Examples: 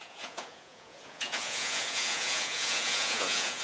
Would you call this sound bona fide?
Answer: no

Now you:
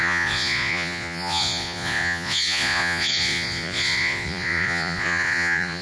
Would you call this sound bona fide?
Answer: no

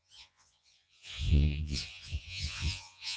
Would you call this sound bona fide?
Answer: no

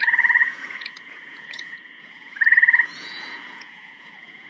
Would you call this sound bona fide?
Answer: no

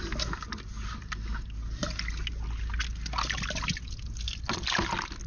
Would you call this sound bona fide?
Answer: yes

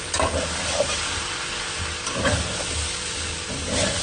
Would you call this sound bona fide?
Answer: yes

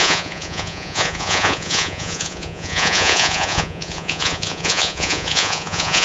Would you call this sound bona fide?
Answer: no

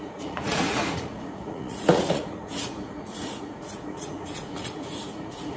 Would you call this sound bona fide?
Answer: no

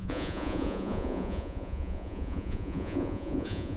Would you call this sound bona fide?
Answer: no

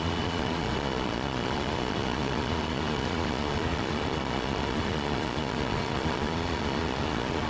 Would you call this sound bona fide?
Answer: no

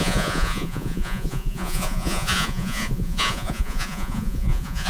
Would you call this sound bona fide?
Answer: no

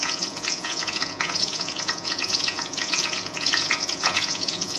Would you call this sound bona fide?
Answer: no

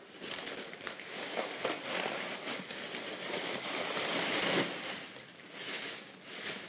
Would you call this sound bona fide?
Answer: yes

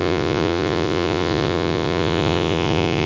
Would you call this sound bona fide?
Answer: no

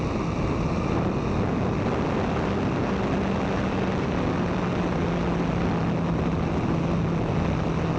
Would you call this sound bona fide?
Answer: yes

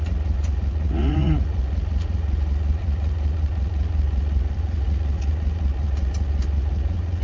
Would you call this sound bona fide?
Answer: no